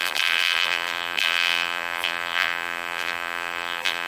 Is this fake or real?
fake